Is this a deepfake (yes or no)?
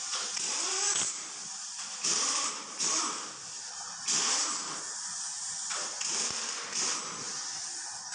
no